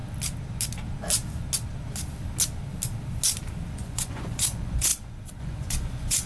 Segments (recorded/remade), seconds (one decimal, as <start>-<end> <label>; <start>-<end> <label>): 0.0-3.7 recorded; 3.7-4.9 remade; 4.9-5.4 recorded; 5.4-6.3 remade